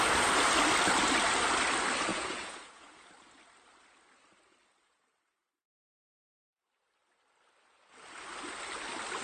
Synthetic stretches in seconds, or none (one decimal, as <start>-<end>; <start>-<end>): 2.1-3.1